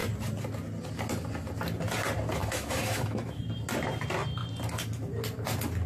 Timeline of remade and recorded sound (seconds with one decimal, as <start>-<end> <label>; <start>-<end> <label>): 0.0-2.4 recorded; 2.4-3.4 remade; 3.4-5.9 recorded